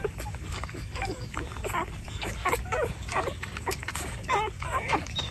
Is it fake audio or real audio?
fake